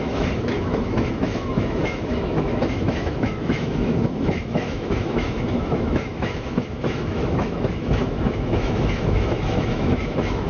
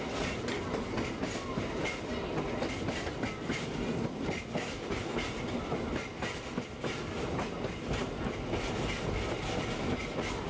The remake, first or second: first